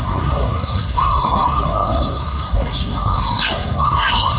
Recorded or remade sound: remade